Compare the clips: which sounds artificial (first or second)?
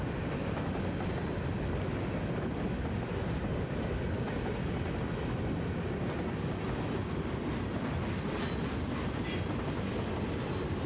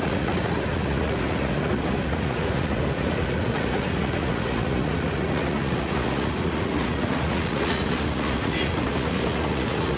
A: second